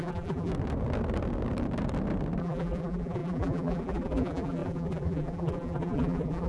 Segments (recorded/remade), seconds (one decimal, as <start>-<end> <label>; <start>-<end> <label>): 0.0-0.5 remade; 0.5-2.4 recorded; 2.4-6.5 remade